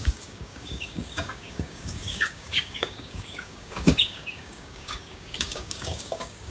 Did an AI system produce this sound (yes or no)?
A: yes